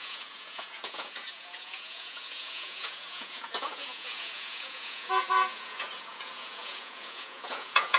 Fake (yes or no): yes